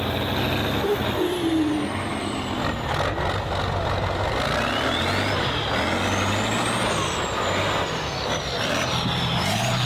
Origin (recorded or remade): recorded